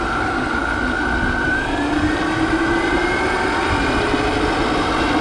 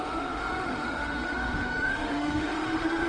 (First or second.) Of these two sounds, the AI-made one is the second